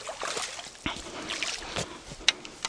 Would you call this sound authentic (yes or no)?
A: yes